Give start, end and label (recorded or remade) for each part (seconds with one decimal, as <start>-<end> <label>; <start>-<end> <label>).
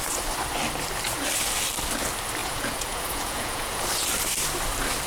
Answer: 0.0-2.4 recorded; 2.4-3.8 remade; 3.8-5.1 recorded